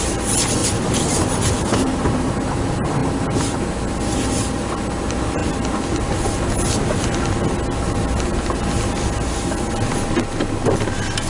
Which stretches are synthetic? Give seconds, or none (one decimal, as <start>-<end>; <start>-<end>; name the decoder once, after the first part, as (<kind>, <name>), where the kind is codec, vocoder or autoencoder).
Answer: 0.6-2.3 (vocoder, BigVGAN v2)